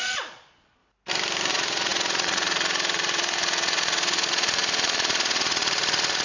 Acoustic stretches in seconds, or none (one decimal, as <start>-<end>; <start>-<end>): 0.8-1.5